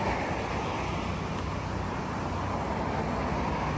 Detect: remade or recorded recorded